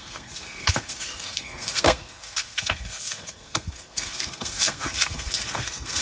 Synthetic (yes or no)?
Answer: yes